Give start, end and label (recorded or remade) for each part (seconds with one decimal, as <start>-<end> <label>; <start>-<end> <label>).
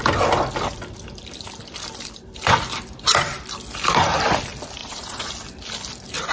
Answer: 0.0-4.8 recorded; 4.8-5.3 remade; 5.3-6.3 recorded